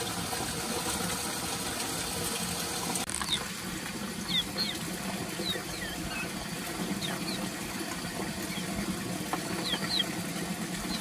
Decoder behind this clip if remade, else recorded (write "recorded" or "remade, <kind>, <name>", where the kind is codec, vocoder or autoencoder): recorded